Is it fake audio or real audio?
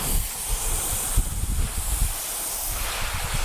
real